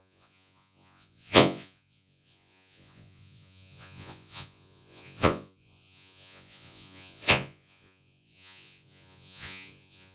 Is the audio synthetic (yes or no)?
yes